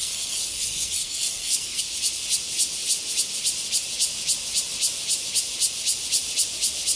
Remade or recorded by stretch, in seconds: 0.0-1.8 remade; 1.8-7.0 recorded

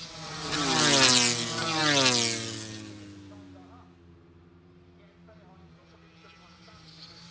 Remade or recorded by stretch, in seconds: 0.0-7.3 recorded

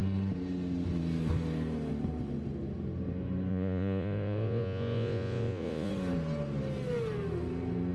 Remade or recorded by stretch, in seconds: 0.0-3.5 recorded; 3.5-5.9 remade; 5.9-7.9 recorded